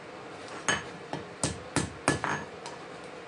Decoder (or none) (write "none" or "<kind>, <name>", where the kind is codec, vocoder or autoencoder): none